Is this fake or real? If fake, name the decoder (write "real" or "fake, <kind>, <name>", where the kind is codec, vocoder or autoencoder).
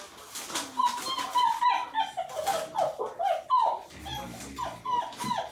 real